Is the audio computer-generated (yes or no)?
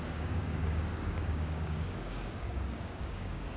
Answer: yes